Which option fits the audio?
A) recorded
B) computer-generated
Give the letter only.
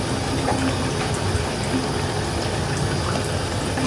A